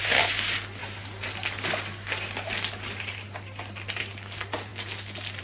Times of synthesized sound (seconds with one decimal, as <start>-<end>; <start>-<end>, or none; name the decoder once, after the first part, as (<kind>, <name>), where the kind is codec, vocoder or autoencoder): 0.8-4.0 (vocoder, BigVGAN v2)